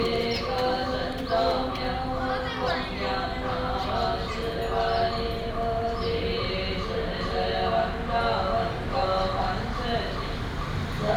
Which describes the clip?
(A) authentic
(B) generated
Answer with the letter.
A